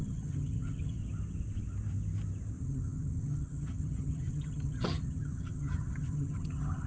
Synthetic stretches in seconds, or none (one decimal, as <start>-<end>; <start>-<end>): 0.0-1.0; 2.6-6.9

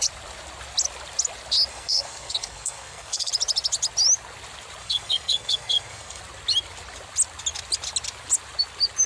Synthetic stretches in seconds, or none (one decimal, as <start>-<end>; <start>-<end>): 1.7-3.3; 4.8-6.2

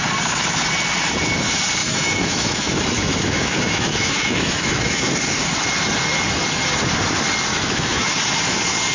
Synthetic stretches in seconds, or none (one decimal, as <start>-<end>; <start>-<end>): 1.8-5.2; 7.5-8.1

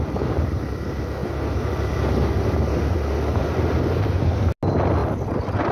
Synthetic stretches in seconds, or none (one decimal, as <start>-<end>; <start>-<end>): 1.2-2.4; 5.0-5.7

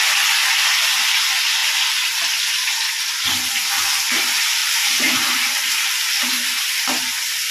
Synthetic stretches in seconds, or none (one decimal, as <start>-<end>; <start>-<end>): 4.6-6.6

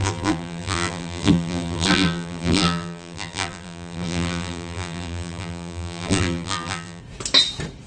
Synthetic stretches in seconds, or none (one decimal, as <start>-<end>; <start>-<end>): 0.0-7.0

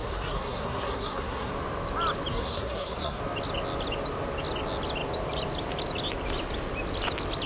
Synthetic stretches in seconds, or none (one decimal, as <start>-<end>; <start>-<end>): 0.0-1.5; 2.3-3.2

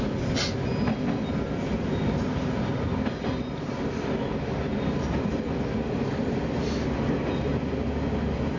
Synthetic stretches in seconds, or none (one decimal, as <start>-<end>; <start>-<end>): none